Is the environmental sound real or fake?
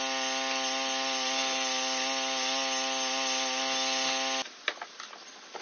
real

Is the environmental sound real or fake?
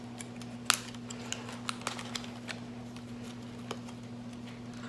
real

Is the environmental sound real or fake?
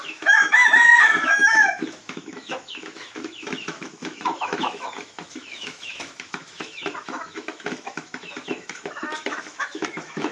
fake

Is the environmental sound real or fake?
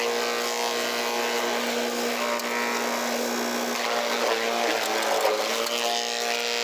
real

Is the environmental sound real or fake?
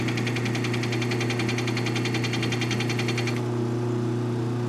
real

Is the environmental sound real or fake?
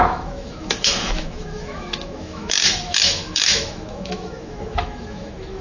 fake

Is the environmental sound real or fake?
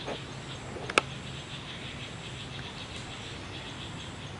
real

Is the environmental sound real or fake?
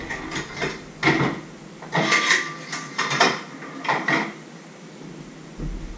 real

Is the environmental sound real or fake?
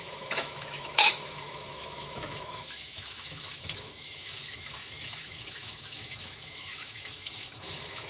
fake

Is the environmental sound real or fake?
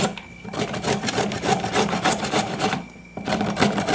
real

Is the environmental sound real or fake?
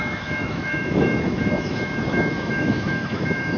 fake